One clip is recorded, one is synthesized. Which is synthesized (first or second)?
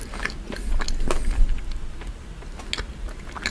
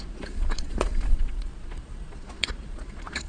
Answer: second